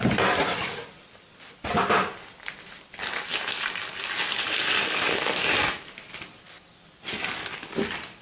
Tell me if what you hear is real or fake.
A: real